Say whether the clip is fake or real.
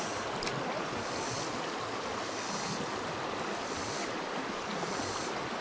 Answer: real